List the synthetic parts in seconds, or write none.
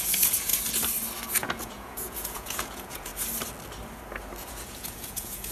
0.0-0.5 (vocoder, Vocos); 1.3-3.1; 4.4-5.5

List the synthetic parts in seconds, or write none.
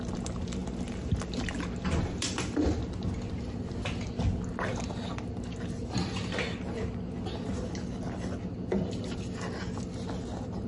none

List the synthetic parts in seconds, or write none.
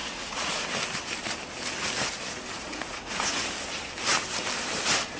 0.0-0.5 (vocoder, Vocos); 2.5-3.5